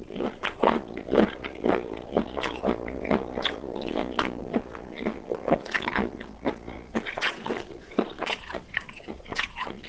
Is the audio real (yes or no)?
no